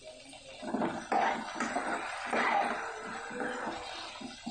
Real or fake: real